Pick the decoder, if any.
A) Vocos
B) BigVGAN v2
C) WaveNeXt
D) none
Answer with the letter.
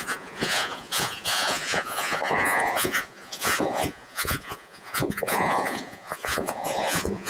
A